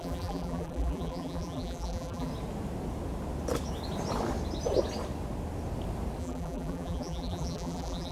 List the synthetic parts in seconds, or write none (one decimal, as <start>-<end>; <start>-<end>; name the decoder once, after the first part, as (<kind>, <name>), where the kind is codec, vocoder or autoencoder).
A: 0.0-2.3 (vocoder, BigVGAN v2); 6.2-8.1